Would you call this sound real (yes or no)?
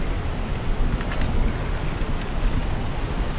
yes